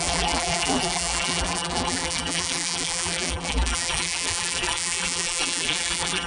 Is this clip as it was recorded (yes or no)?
no